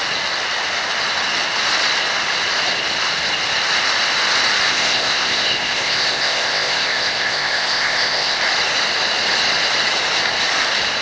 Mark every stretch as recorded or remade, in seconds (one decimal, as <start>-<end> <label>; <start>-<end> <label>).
0.0-4.7 recorded; 4.7-8.4 remade; 8.4-11.0 recorded